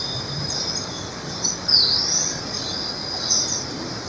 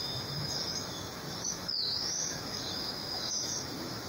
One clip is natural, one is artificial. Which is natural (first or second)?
first